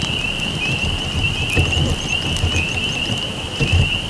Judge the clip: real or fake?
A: fake